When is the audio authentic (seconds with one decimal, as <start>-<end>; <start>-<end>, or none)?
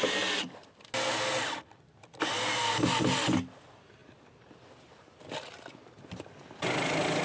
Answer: 0.0-7.2